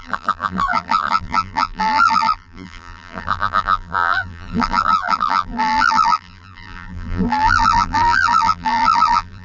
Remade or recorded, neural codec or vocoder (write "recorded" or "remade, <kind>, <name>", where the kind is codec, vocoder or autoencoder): remade, vocoder, BigVGAN v2